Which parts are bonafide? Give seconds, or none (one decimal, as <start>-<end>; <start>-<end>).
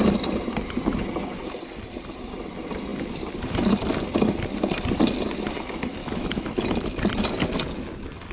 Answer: 0.0-6.0; 6.5-8.3